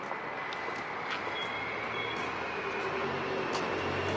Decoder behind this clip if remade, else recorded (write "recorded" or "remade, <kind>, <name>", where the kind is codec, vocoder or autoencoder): recorded